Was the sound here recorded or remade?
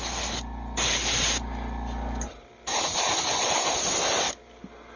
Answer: recorded